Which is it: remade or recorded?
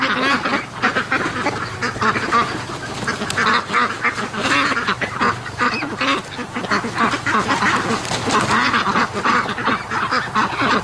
recorded